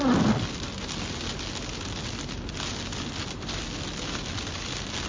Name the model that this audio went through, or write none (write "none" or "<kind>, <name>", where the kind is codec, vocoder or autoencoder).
none